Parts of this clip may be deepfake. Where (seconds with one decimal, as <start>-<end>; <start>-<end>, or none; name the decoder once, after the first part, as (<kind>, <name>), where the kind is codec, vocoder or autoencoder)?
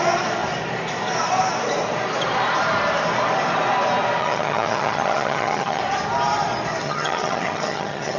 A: 4.2-5.8 (vocoder, HiFi-GAN); 6.8-8.2